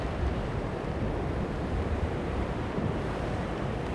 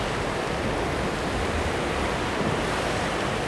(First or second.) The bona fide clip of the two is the second